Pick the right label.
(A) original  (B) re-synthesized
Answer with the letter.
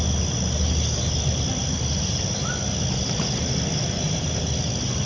A